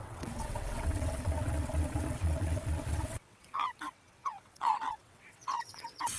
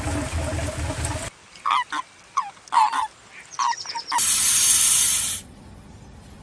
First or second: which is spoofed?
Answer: first